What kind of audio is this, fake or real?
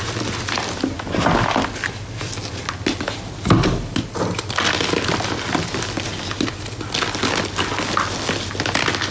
real